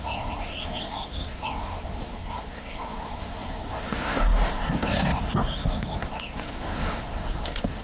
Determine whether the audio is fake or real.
fake